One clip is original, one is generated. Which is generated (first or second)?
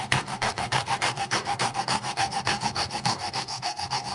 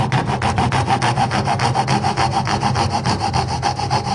first